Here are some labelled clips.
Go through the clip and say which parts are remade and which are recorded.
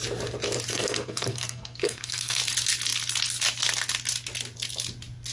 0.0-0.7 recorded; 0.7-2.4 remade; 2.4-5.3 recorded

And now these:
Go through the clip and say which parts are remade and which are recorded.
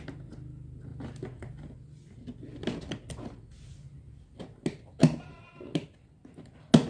0.0-6.9 recorded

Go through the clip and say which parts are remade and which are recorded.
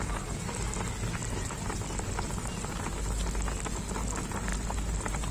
0.0-5.3 recorded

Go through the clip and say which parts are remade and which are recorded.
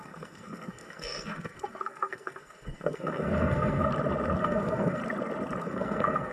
0.0-3.9 remade; 3.9-4.4 recorded; 4.4-5.0 remade; 5.0-5.6 recorded; 5.6-6.3 remade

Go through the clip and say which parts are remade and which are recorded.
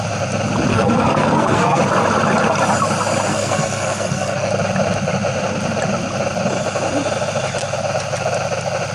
0.0-0.7 recorded; 0.7-1.8 remade; 1.8-3.3 recorded; 3.3-4.5 remade; 4.5-8.9 recorded